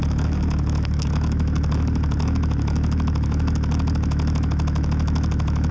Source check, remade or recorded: remade